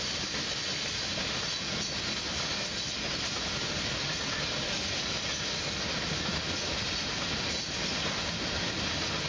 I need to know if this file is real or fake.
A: real